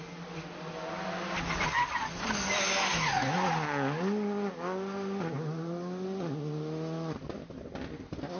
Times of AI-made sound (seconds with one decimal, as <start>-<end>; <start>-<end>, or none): none